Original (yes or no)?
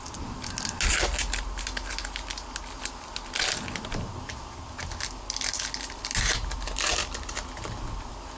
yes